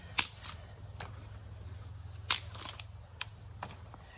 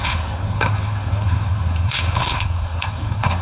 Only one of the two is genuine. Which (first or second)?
first